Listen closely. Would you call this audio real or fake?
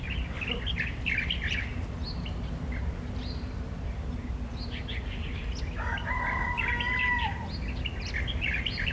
real